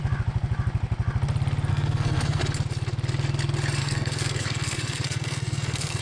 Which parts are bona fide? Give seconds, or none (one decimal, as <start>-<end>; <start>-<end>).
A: 0.0-1.7; 2.4-3.8